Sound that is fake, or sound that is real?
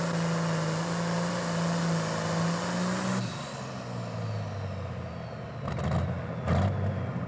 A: real